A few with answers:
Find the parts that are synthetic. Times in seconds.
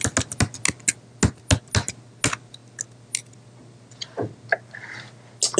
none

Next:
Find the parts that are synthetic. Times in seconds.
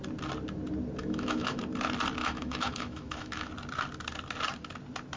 1.0-1.6 (autoencoder, DAC-VAE); 2.2-3.5